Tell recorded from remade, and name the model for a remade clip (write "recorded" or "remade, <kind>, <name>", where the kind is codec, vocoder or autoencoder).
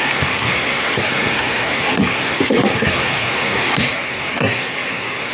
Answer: remade, codec, SNAC